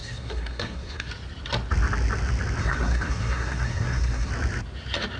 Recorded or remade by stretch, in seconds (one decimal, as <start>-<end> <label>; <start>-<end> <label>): 0.0-1.1 remade; 1.1-2.6 recorded; 2.6-4.3 remade; 4.3-5.2 recorded